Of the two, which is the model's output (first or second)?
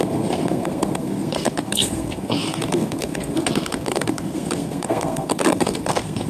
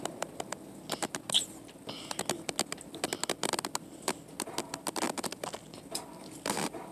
first